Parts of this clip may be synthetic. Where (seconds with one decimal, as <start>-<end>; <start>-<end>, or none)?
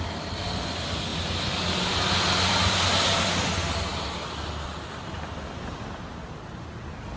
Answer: none